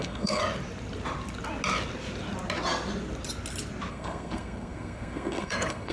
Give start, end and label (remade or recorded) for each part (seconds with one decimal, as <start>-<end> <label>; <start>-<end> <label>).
0.0-0.4 remade; 0.4-3.9 recorded; 3.9-5.9 remade